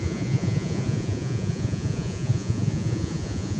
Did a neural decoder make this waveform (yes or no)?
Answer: yes